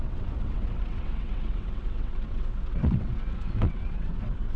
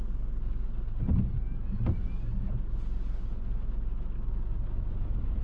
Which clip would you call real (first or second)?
second